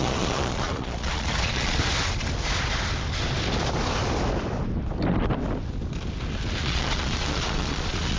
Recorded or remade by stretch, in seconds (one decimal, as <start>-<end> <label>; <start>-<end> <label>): 0.0-1.8 remade; 1.8-6.6 recorded; 6.6-8.2 remade